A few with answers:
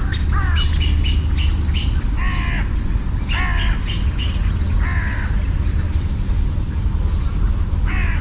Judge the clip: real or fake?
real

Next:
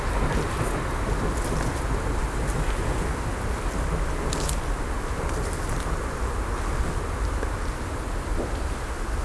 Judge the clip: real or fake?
real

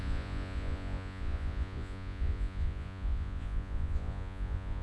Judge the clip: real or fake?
fake